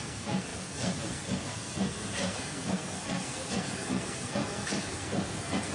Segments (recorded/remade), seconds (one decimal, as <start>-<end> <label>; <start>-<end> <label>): 0.0-5.7 remade